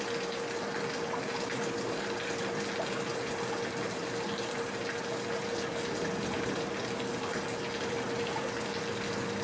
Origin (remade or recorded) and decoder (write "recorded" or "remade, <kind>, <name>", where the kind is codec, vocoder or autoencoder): recorded